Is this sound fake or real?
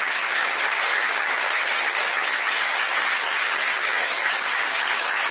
fake